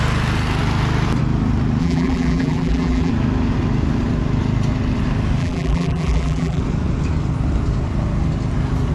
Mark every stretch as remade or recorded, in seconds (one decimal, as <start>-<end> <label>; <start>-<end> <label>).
0.0-1.8 recorded; 1.8-3.1 remade; 3.1-5.4 recorded; 5.4-6.6 remade; 6.6-8.9 recorded